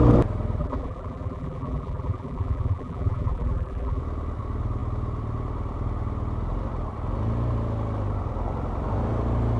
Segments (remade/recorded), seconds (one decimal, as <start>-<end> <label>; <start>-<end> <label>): 0.0-0.6 recorded; 0.6-4.0 remade; 4.0-9.6 recorded